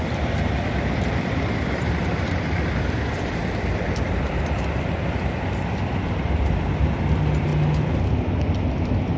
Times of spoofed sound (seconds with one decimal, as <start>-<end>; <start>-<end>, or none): 0.0-7.5; 8.5-9.2